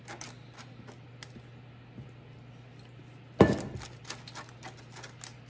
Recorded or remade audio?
recorded